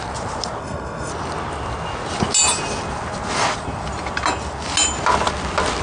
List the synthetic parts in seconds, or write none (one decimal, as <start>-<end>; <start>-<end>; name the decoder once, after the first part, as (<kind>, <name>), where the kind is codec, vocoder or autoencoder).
0.6-1.1 (codec, SNAC)